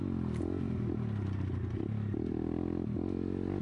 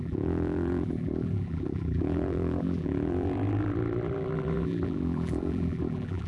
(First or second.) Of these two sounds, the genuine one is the first